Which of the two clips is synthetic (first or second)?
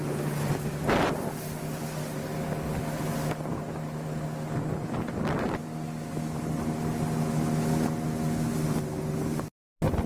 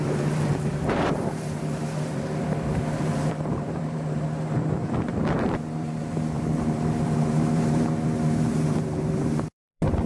second